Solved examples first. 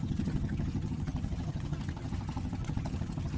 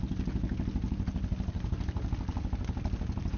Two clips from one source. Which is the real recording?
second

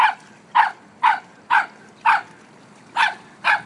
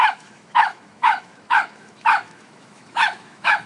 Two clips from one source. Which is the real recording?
first